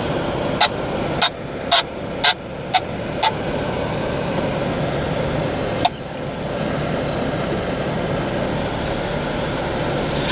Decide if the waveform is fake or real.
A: real